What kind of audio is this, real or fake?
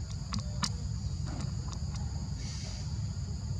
real